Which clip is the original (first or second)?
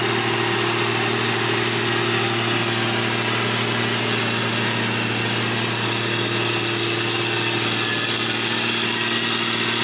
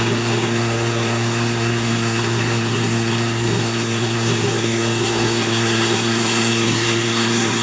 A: first